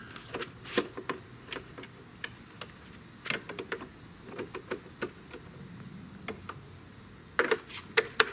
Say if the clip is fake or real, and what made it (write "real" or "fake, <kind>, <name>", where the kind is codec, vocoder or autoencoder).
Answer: real